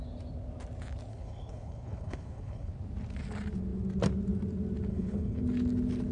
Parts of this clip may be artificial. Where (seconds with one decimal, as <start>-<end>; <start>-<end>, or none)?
1.1-2.7; 4.9-5.4